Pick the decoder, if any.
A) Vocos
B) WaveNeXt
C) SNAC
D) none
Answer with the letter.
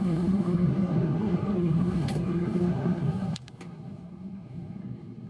C